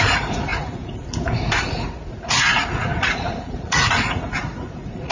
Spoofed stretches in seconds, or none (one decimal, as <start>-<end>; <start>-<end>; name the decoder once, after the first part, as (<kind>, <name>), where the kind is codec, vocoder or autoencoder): 0.0-5.1 (vocoder, Vocos)

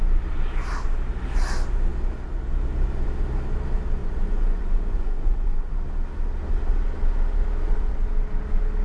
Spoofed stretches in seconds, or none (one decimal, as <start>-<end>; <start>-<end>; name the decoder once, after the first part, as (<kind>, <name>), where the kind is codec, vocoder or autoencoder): 4.0-5.7 (vocoder, Vocos)

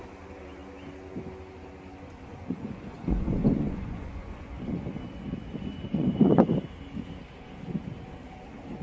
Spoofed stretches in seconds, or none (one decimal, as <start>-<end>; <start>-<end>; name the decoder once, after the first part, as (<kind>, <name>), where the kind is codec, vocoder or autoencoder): 2.3-5.1 (vocoder, Vocos); 5.9-6.5